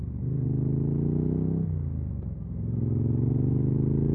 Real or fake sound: real